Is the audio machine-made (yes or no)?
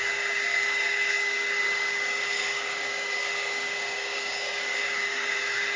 yes